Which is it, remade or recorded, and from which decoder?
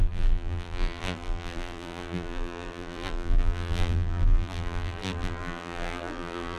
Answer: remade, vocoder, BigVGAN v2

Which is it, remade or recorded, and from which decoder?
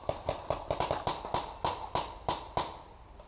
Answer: recorded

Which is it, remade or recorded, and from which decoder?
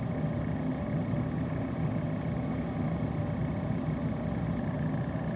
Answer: recorded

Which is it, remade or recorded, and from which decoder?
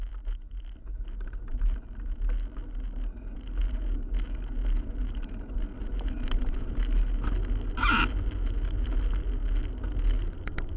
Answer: recorded